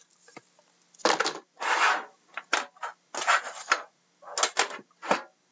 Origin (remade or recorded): recorded